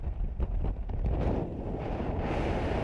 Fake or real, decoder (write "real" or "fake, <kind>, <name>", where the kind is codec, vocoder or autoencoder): real